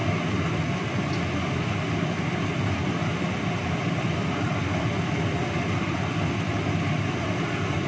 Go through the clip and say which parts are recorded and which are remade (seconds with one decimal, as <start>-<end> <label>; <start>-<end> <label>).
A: 0.0-7.9 recorded

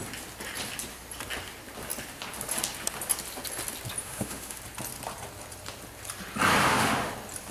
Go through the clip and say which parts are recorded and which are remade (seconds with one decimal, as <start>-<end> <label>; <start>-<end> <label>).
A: 0.0-4.0 recorded; 4.0-4.6 remade; 4.6-6.6 recorded; 6.6-7.1 remade; 7.1-7.5 recorded

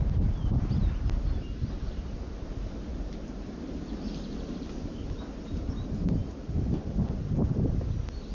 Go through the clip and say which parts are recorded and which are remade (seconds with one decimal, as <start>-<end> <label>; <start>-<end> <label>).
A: 0.0-2.9 recorded; 2.9-5.7 remade; 5.7-8.3 recorded

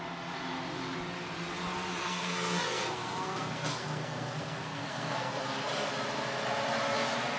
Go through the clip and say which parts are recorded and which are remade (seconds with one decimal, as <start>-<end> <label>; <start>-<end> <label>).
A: 0.0-2.0 recorded; 2.0-5.3 remade; 5.3-7.4 recorded

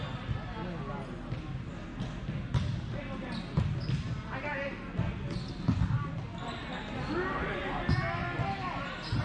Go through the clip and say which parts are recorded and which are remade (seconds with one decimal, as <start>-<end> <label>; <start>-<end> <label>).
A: 0.0-9.2 recorded

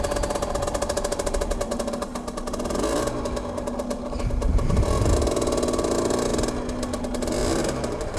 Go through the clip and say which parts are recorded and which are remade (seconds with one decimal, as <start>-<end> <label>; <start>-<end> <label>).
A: 0.0-4.5 recorded; 4.5-5.3 remade; 5.3-7.4 recorded; 7.4-8.2 remade

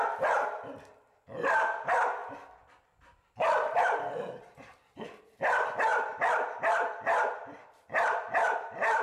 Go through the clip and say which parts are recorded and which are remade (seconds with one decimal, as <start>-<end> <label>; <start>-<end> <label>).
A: 0.0-9.0 remade

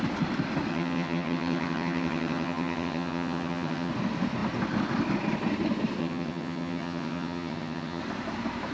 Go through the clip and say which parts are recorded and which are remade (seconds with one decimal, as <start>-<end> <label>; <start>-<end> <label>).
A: 0.0-0.7 recorded; 0.7-3.9 remade; 3.9-6.0 recorded; 6.0-8.0 remade; 8.0-8.7 recorded